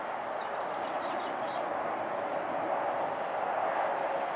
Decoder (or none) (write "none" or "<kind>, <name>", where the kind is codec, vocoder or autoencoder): none